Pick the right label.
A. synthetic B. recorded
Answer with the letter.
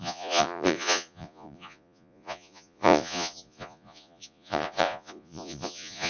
A